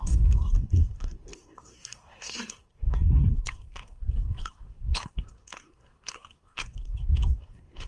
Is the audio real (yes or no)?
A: no